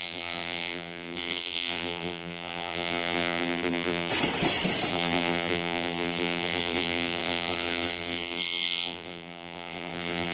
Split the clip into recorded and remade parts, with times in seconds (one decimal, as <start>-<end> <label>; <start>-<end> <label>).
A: 0.0-4.1 remade; 4.1-4.9 recorded; 4.9-10.3 remade